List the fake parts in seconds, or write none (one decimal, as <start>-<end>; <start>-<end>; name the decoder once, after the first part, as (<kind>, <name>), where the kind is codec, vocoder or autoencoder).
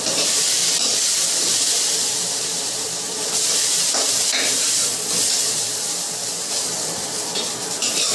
0.0-4.8 (vocoder, BigVGAN v2); 5.4-8.1